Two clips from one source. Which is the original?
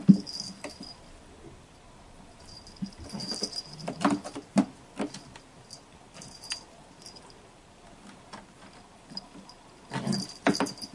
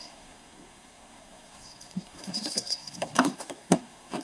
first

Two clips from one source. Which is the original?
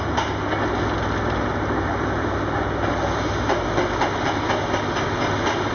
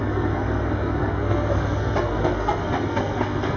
first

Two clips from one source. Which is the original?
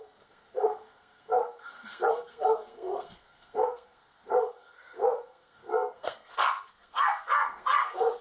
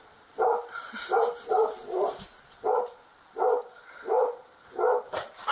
second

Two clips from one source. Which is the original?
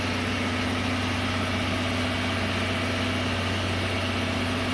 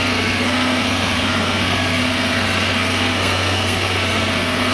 first